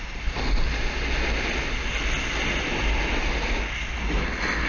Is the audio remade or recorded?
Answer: recorded